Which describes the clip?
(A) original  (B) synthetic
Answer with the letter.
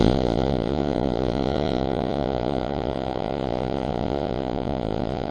B